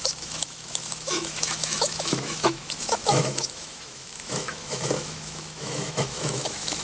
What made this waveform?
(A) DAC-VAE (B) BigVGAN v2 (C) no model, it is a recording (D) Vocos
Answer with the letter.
A